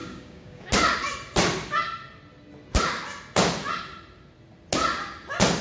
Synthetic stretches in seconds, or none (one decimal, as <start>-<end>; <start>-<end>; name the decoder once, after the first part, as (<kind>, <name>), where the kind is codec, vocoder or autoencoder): 0.0-0.7 (codec, DAC)

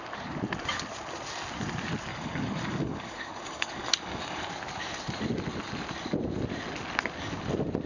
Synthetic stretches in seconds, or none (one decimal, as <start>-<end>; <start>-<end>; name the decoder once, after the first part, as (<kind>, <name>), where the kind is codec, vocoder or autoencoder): 2.1-4.5 (codec, DAC)

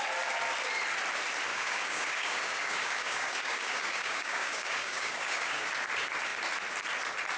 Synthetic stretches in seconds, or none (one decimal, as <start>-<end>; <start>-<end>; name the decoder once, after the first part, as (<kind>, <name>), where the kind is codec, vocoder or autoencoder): 1.5-5.7 (codec, DAC)

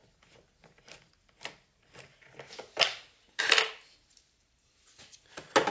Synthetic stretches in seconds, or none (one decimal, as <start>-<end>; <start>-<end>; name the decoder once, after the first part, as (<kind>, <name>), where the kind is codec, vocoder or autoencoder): none

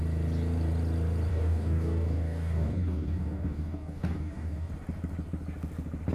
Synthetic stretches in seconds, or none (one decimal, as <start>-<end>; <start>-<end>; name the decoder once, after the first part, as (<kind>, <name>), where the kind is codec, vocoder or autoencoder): 1.3-4.7 (codec, DAC)

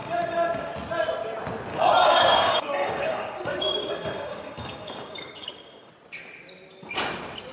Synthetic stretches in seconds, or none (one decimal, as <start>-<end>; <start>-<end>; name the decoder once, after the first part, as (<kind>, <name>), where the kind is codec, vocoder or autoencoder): 0.0-0.7 (codec, DAC); 1.7-5.9

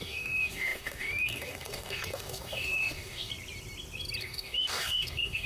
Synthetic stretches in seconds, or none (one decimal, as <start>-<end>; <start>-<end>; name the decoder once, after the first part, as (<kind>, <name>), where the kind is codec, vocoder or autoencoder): 0.0-3.3 (codec, DAC); 4.2-5.5